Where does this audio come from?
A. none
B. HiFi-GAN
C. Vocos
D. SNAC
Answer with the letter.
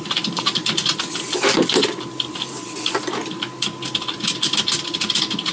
A